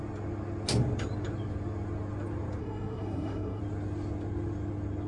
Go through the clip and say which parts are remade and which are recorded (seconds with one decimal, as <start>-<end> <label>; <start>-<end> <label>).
0.0-2.6 recorded; 2.6-3.6 remade; 3.6-5.1 recorded

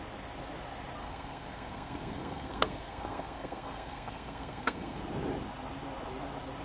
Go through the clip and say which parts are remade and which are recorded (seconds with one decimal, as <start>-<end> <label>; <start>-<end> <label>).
0.0-1.0 recorded; 1.0-5.0 remade; 5.0-6.6 recorded

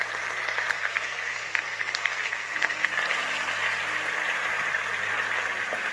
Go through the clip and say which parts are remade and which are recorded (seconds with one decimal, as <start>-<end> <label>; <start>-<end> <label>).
0.0-0.7 recorded; 0.7-2.9 remade; 2.9-5.9 recorded